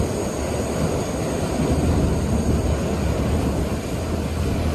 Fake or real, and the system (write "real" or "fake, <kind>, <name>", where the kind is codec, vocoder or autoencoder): real